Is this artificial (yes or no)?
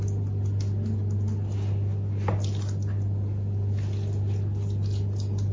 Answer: no